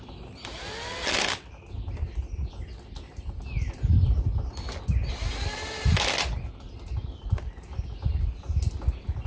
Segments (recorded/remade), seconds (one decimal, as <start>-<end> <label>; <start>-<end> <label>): 0.0-9.3 recorded